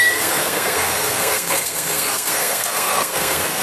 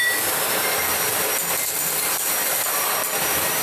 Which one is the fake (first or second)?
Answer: first